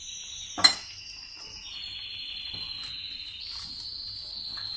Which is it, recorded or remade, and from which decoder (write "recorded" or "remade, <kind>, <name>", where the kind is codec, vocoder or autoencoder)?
recorded